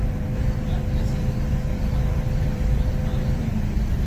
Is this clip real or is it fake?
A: fake